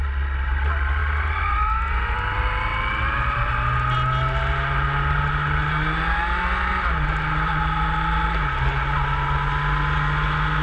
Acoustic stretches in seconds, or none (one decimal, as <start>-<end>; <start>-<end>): 0.0-10.6